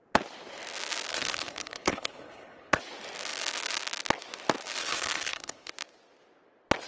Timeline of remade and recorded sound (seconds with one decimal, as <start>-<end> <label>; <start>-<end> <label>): 0.0-1.1 recorded; 1.1-2.8 remade; 2.8-4.8 recorded; 4.8-5.7 remade; 5.7-6.9 recorded